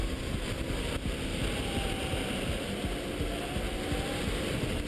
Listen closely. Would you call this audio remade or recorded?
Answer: recorded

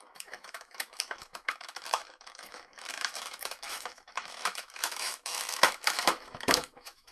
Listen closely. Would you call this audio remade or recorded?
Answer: remade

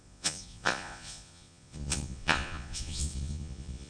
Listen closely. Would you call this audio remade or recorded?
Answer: remade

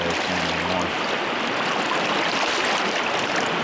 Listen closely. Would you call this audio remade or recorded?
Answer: recorded